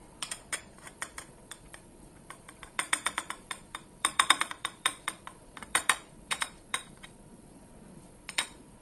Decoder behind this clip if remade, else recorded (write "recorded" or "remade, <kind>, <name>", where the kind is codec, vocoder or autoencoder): remade, vocoder, Vocos